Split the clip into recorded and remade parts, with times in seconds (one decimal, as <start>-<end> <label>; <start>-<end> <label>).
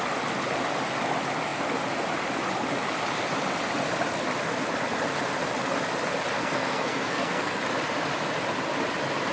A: 0.0-6.4 recorded; 6.4-7.6 remade; 7.6-9.3 recorded